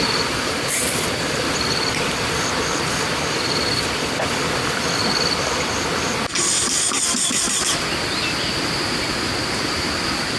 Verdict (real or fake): fake